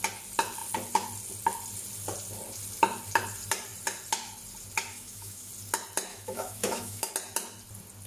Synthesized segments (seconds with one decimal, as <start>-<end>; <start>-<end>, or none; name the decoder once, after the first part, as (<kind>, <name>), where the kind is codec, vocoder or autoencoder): 4.9-5.5 (autoencoder, DAC-VAE); 6.1-7.1